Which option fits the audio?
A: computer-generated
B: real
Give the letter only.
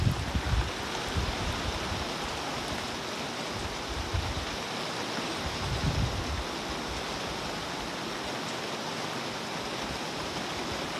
B